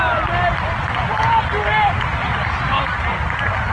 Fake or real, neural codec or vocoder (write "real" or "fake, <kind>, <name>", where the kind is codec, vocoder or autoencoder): real